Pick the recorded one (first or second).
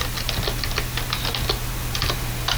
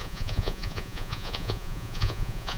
first